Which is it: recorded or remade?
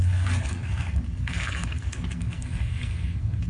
remade